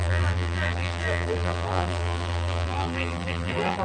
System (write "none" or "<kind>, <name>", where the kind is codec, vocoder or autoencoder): vocoder, BigVGAN v2